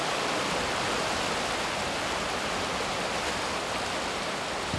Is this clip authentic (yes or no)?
yes